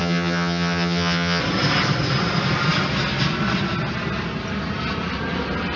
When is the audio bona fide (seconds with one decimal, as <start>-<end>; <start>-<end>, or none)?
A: 1.4-5.8